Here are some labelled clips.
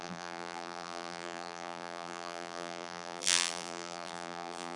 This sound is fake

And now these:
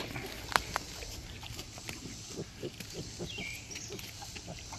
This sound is real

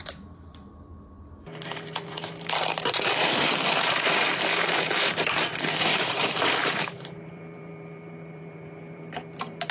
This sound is fake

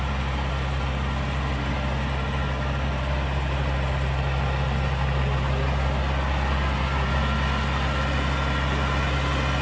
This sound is real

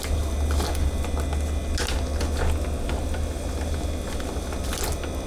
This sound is real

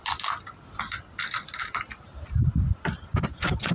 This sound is real